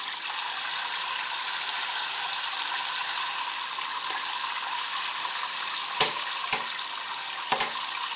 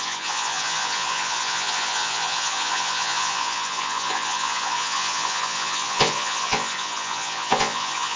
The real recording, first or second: first